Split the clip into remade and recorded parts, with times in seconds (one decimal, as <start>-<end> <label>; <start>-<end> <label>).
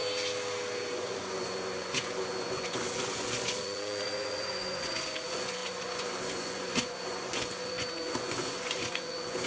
0.0-0.9 recorded; 0.9-9.5 remade